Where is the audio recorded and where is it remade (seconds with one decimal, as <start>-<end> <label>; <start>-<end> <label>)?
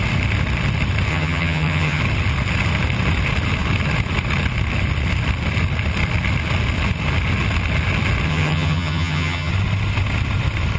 0.0-1.1 recorded; 1.1-2.0 remade; 2.0-8.3 recorded; 8.3-9.5 remade; 9.5-10.8 recorded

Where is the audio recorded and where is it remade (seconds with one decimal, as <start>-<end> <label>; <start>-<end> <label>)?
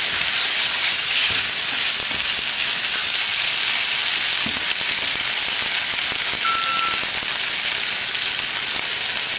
0.0-0.4 recorded; 0.4-1.4 remade; 1.4-9.4 recorded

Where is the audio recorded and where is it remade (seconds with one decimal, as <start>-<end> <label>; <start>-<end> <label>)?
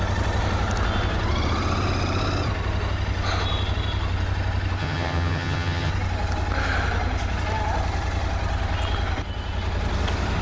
0.0-4.8 recorded; 4.8-5.9 remade; 5.9-10.4 recorded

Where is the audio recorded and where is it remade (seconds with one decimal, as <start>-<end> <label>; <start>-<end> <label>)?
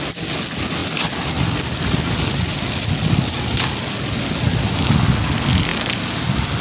0.0-6.6 recorded